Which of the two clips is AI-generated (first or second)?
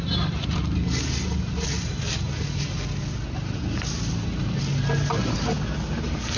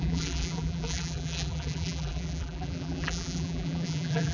second